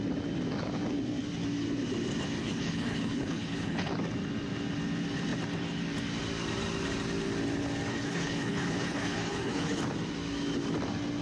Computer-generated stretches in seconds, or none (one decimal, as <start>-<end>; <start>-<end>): 2.4-3.9; 7.9-9.8